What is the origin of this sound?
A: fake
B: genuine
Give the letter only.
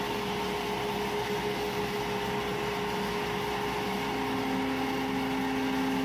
B